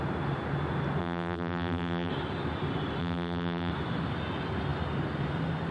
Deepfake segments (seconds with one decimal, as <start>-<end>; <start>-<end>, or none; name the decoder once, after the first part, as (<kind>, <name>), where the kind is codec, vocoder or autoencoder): 1.0-2.1 (vocoder, BigVGAN v2); 3.0-3.7